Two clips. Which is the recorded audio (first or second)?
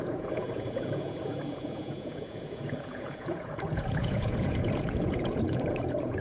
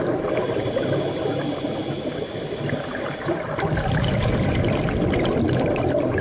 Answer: second